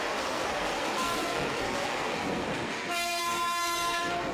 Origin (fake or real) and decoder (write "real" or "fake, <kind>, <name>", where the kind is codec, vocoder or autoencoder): fake, codec, SNAC